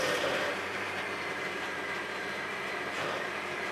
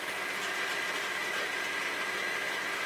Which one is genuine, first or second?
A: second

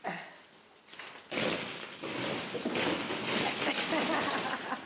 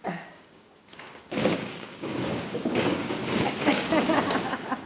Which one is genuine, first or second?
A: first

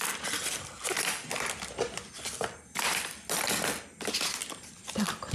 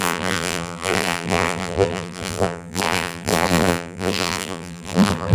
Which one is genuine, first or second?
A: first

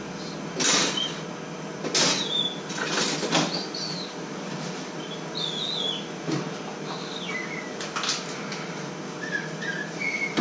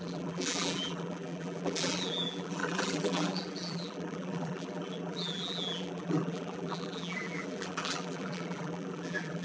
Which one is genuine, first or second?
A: first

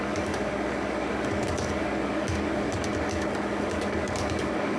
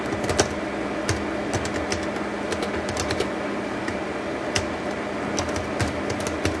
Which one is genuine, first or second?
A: second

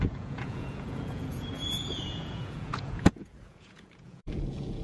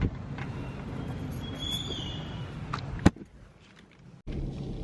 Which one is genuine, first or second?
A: second